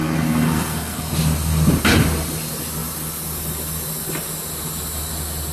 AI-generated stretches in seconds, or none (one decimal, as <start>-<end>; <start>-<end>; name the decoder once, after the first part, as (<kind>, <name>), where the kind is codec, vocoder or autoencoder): 0.0-1.1 (codec, SNAC)